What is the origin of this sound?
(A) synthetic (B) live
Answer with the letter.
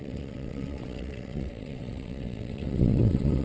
A